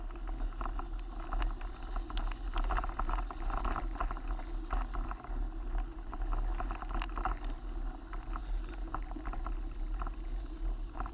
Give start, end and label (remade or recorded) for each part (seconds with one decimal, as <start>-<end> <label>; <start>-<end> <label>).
0.0-11.1 recorded